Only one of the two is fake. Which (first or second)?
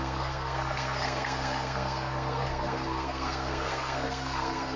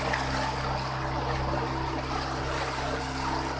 first